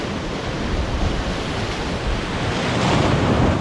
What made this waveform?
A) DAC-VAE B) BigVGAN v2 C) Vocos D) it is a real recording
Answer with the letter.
D